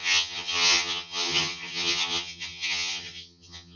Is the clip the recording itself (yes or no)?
no